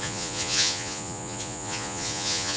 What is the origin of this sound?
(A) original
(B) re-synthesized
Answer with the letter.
B